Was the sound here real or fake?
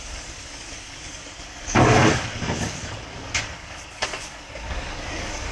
fake